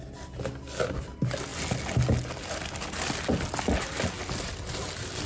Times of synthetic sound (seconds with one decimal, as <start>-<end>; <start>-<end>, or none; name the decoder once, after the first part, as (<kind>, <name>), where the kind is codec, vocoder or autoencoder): none